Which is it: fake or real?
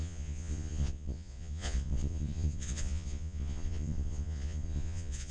fake